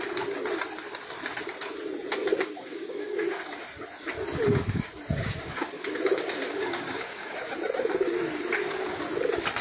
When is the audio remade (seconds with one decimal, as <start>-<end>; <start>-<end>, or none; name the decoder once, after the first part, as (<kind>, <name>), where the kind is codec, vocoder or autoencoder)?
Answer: 2.2-3.4 (codec, DAC); 4.3-7.4